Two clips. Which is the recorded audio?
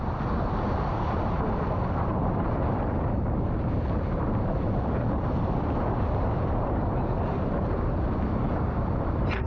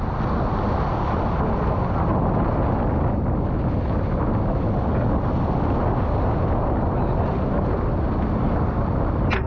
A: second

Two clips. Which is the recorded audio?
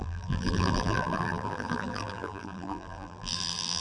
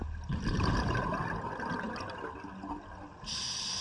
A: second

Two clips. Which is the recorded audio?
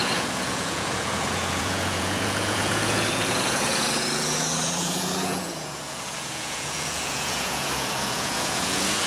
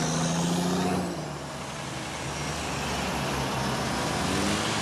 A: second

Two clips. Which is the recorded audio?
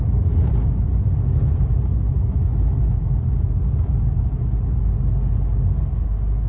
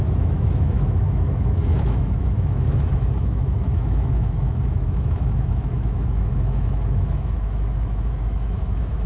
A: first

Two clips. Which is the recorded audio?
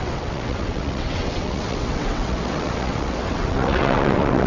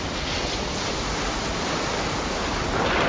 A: second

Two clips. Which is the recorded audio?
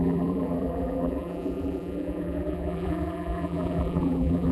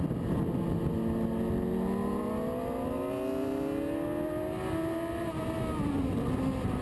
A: second